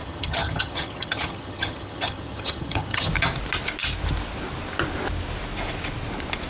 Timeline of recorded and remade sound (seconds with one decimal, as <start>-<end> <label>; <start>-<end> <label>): 0.0-3.1 remade; 3.1-6.5 recorded